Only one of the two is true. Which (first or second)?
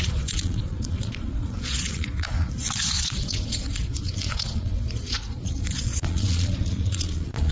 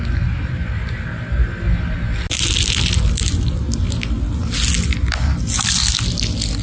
second